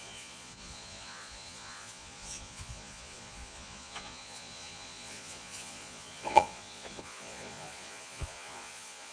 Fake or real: fake